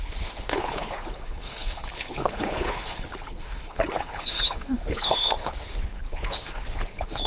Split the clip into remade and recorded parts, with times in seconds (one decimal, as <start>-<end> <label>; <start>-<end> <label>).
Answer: 0.0-7.3 remade